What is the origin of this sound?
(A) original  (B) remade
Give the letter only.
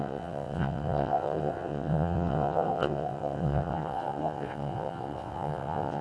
B